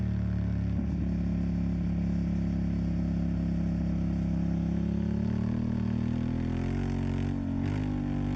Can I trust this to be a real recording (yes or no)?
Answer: yes